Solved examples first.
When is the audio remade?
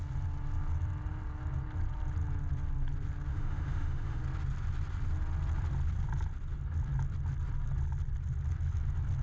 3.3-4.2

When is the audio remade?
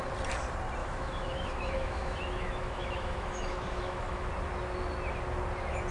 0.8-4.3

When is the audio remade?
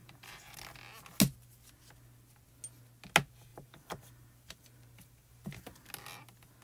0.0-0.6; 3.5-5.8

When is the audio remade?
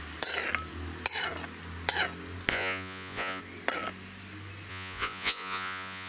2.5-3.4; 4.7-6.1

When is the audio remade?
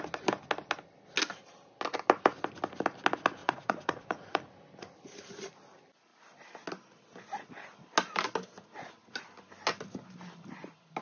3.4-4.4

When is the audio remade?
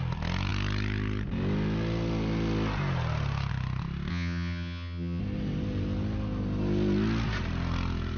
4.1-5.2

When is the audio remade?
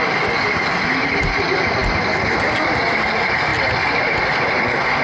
none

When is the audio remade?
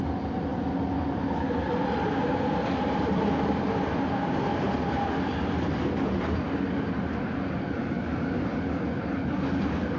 none